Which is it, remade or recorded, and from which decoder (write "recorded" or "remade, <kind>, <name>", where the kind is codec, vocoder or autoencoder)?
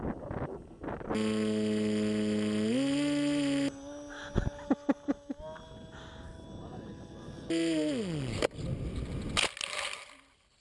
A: recorded